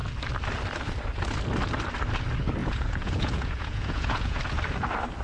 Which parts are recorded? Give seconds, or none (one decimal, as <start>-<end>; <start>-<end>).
0.0-2.6; 4.4-5.2